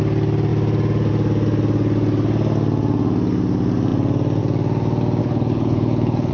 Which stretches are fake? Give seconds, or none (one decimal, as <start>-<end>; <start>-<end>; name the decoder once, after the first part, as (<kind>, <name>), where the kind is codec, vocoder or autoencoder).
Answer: 5.2-6.3 (codec, HILCodec)